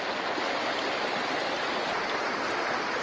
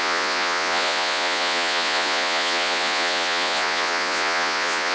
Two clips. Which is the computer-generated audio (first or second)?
second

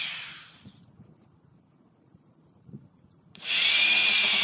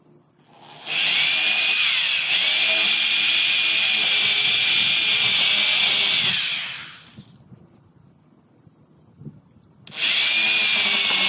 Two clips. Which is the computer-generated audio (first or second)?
first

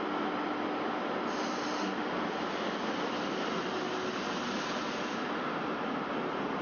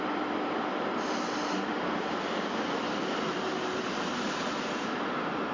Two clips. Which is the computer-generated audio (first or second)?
second